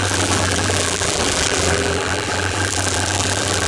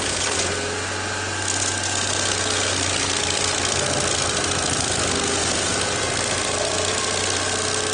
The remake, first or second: first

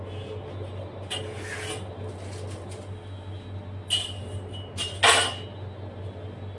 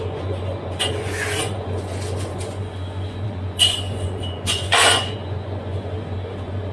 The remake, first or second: second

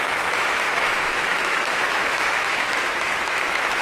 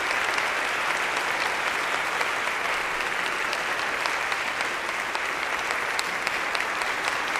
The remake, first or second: first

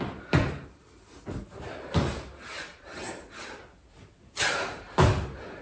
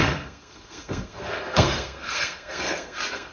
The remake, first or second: second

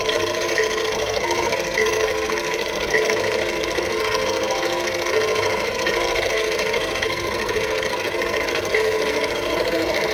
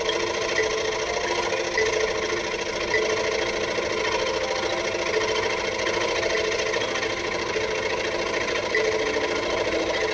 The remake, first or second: first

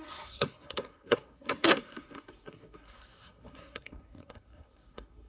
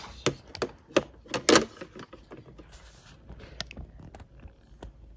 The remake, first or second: first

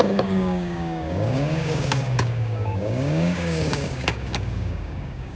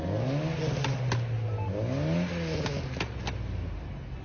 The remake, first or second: first